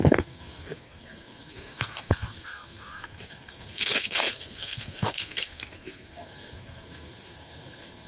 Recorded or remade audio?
remade